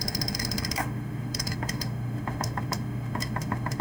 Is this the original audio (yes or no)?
no